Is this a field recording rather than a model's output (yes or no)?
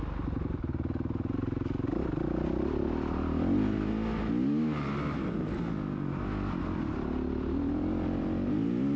yes